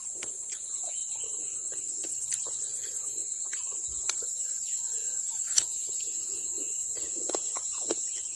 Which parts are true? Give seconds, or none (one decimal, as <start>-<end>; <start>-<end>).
1.0-2.3; 3.2-3.8